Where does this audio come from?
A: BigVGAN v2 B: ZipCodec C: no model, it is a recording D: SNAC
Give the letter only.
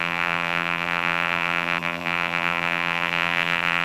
A